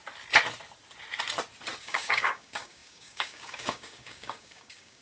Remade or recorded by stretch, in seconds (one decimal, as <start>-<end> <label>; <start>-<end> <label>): 0.0-1.8 recorded; 1.8-5.0 remade